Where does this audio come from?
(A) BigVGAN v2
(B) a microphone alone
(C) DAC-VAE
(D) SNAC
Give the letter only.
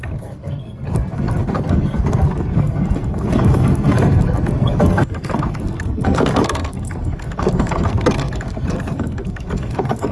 D